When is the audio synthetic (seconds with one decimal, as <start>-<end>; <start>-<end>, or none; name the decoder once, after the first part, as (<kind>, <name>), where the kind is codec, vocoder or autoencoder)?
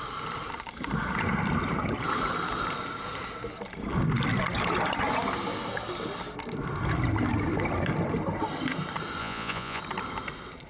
9.2-9.8 (vocoder, Vocos)